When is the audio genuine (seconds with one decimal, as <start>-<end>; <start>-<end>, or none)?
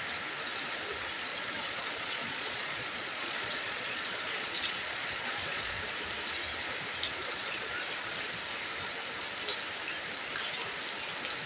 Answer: 0.0-1.3; 5.9-7.2; 7.7-11.5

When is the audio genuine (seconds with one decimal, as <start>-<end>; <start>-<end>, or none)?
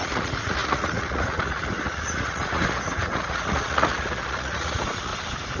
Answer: 5.1-5.6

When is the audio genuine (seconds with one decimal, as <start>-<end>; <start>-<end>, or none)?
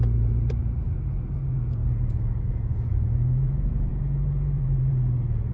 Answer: none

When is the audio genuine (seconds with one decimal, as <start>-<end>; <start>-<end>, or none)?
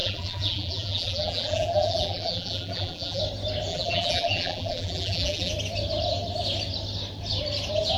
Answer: 3.2-3.7; 5.5-8.0